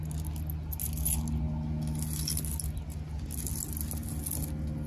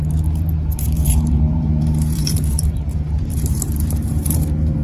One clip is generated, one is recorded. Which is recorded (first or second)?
first